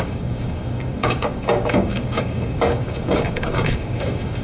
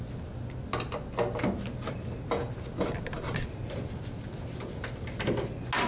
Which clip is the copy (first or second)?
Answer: first